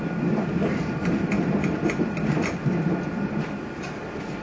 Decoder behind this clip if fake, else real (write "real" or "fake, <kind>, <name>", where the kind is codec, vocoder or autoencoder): real